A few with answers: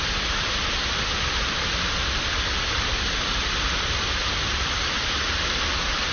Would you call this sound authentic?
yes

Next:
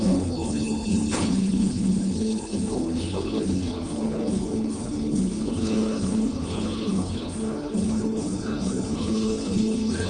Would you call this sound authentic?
no